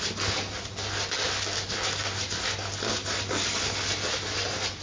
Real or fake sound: real